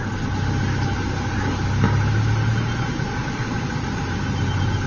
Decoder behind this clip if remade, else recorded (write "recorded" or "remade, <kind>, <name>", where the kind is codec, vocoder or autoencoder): recorded